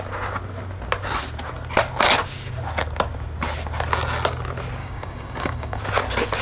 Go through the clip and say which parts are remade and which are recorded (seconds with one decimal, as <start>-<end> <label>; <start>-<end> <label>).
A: 0.0-4.8 recorded; 4.8-5.8 remade; 5.8-6.4 recorded